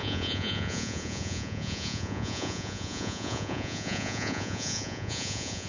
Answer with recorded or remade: remade